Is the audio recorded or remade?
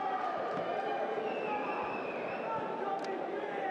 recorded